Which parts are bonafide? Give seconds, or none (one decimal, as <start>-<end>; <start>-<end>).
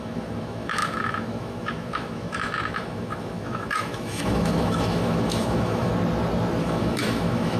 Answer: 5.9-6.6